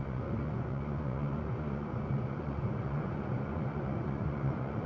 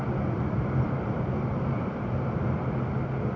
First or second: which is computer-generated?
first